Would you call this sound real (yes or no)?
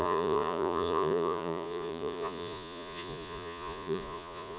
no